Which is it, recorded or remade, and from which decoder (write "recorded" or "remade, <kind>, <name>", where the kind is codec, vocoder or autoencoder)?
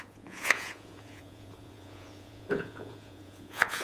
remade, vocoder, Vocos